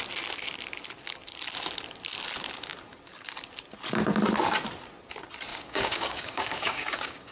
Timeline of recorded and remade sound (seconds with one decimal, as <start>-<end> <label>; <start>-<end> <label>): 0.0-5.5 recorded; 5.5-7.3 remade